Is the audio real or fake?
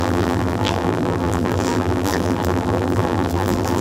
fake